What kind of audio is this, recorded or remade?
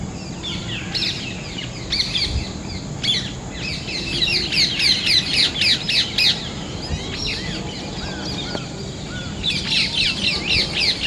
recorded